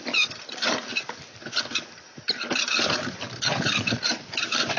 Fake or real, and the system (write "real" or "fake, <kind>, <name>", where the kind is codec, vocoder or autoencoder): real